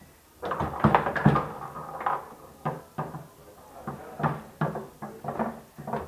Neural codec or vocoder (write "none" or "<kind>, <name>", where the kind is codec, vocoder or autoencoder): none